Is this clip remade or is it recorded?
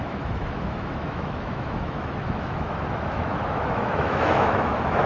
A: remade